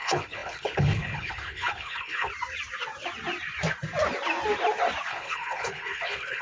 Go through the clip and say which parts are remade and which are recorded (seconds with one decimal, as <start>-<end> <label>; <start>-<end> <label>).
0.0-2.3 remade; 2.3-5.1 recorded; 5.1-6.4 remade